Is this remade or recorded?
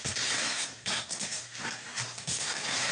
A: remade